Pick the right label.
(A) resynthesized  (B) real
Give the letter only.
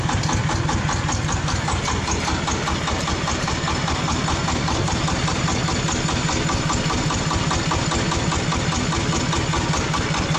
B